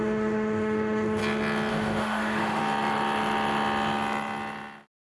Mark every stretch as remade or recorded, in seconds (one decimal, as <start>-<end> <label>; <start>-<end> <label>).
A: 0.0-1.2 remade; 1.2-1.7 recorded; 1.7-2.6 remade; 2.6-5.1 recorded

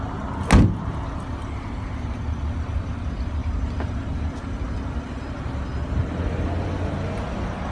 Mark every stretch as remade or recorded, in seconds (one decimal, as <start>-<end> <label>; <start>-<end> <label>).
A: 0.0-7.7 recorded

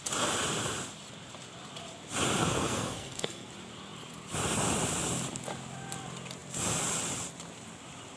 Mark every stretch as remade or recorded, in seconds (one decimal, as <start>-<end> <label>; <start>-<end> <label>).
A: 0.0-2.4 recorded; 2.4-3.5 remade; 3.5-8.2 recorded

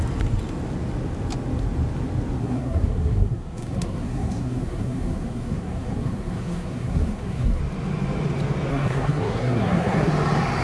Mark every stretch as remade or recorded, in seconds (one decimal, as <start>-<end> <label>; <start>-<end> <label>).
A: 0.0-2.4 recorded; 2.4-7.6 remade; 7.6-8.7 recorded; 8.7-10.1 remade; 10.1-10.6 recorded

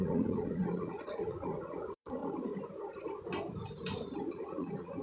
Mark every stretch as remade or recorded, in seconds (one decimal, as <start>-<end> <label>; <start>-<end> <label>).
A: 0.0-2.2 remade; 2.2-4.3 recorded; 4.3-5.0 remade

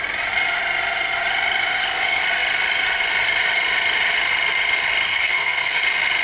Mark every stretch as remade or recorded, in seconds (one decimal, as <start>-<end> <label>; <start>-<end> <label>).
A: 0.0-5.1 recorded; 5.1-5.8 remade; 5.8-6.2 recorded

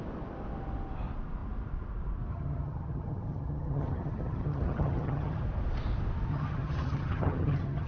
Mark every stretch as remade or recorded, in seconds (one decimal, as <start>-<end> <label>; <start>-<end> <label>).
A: 0.0-2.3 recorded; 2.3-5.4 remade; 5.4-6.3 recorded; 6.3-7.9 remade